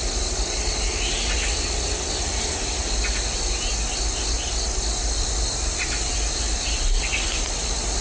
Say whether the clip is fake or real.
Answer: real